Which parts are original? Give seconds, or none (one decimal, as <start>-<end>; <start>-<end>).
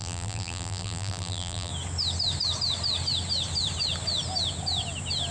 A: 1.7-5.3